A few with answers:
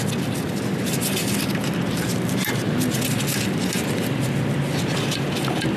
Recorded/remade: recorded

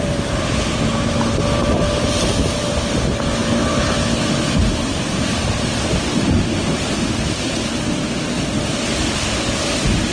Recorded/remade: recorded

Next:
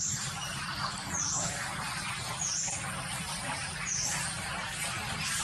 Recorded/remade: remade